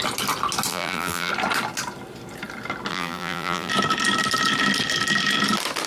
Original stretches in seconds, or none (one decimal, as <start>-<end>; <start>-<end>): 0.0-0.7; 1.3-2.9; 3.7-5.9